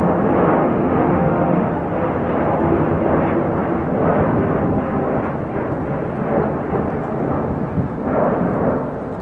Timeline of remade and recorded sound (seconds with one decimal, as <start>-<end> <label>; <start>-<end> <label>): 0.0-0.6 recorded; 0.6-1.8 remade; 1.8-9.2 recorded